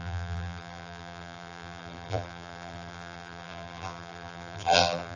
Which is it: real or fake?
fake